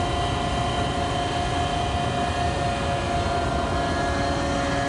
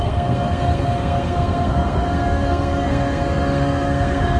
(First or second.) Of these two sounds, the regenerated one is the second